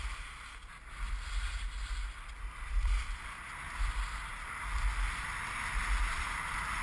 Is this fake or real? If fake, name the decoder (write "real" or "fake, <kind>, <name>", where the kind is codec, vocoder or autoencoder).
real